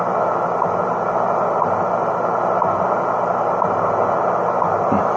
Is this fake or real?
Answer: real